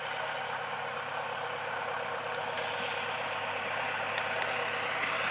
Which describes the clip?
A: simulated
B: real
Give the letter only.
A